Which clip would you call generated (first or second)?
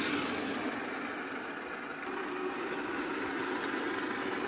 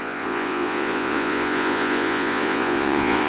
second